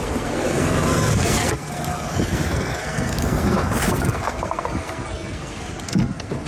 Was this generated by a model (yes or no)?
yes